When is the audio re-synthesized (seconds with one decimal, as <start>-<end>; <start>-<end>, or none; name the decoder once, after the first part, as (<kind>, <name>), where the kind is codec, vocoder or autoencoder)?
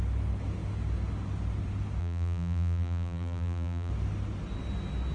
2.0-3.9 (vocoder, BigVGAN v2)